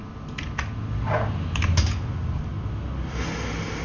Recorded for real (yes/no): yes